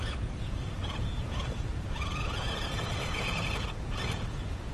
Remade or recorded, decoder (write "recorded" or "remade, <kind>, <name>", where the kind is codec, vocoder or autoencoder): remade, vocoder, Vocos